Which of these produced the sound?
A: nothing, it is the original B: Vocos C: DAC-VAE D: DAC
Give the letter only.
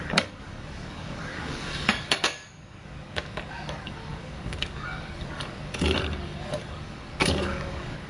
D